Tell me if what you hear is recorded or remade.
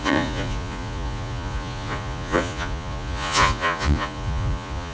remade